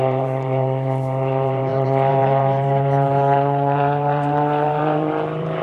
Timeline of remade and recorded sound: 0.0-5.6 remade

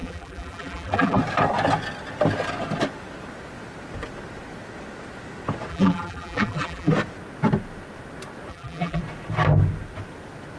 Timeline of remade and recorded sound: 0.0-1.2 remade; 1.2-5.7 recorded; 5.7-6.9 remade; 6.9-8.5 recorded; 8.5-9.0 remade; 9.0-10.6 recorded

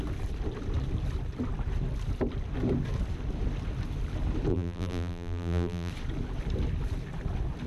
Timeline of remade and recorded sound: 0.0-4.5 recorded; 4.5-5.9 remade; 5.9-7.7 recorded

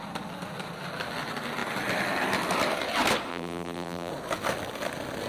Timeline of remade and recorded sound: 0.0-3.3 recorded; 3.3-4.1 remade; 4.1-5.3 recorded

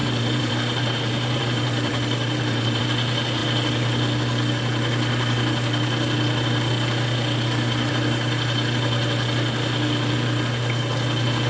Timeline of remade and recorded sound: 0.0-2.8 remade; 2.8-11.5 recorded

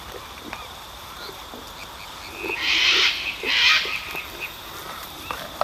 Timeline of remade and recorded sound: 0.0-1.4 remade; 1.4-4.8 recorded; 4.8-5.6 remade

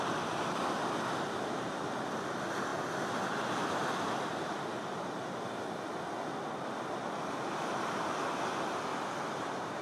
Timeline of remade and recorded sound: 0.0-8.9 recorded; 8.9-9.8 remade